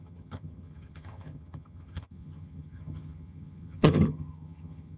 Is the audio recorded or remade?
remade